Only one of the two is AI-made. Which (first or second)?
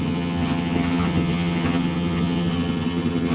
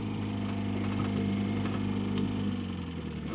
first